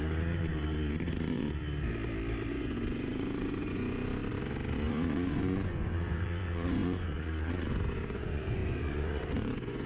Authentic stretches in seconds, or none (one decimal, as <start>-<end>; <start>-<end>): 1.6-2.5; 4.2-4.9